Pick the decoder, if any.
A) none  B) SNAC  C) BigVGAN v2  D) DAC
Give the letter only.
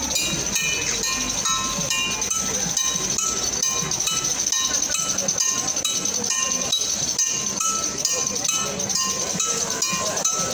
A